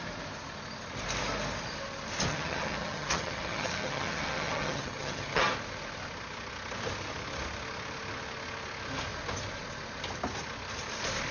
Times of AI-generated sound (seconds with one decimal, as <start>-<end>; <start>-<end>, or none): 2.3-5.4